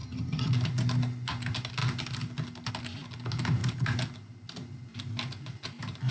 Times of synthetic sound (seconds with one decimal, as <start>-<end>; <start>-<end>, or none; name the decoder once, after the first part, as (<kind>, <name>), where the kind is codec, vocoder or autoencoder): 0.0-0.5 (vocoder, HiFi-GAN)